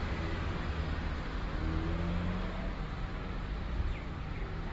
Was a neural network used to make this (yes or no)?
no